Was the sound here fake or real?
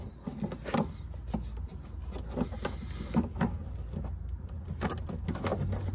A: real